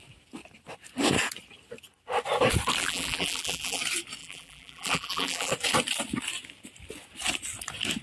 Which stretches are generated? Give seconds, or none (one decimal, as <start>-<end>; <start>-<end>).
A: 2.8-3.8; 4.2-5.5